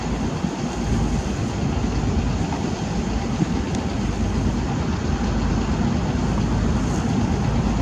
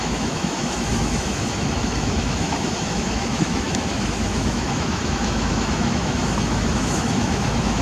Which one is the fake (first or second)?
second